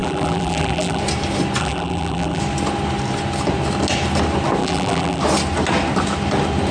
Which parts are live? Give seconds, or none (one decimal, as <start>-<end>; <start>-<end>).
1.0-1.6; 2.4-4.6; 5.2-6.7